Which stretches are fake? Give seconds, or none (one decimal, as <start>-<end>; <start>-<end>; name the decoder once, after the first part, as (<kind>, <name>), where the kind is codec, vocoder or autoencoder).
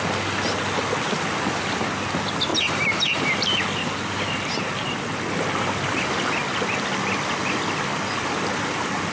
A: 2.5-3.3 (vocoder, BigVGAN v2)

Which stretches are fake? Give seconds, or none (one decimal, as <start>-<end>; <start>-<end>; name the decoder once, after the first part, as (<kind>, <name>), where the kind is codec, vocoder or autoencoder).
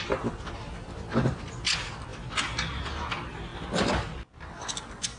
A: none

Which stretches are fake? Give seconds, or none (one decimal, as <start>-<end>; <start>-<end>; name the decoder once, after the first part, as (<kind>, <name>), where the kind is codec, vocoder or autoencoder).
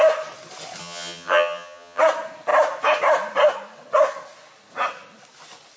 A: 0.8-2.0 (vocoder, HiFi-GAN)